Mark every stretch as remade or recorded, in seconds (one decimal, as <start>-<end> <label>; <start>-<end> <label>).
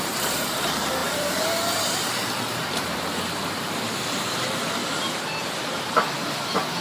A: 0.0-4.8 remade; 4.8-5.4 recorded; 5.4-6.8 remade